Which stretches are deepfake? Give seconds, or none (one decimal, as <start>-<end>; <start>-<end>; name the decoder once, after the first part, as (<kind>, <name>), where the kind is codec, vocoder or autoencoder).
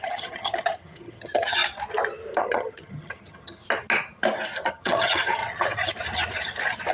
0.0-1.6 (vocoder, HiFi-GAN); 2.4-3.6; 4.7-5.4